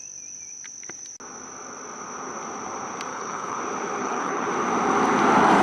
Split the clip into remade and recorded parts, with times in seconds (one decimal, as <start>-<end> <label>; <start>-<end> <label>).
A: 0.0-3.1 recorded; 3.1-3.6 remade; 3.6-4.0 recorded; 4.0-4.5 remade; 4.5-5.6 recorded